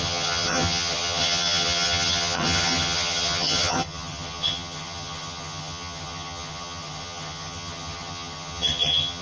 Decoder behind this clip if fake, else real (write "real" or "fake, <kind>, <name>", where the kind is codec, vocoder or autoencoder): fake, vocoder, HiFi-GAN